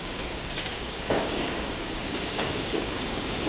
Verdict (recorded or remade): remade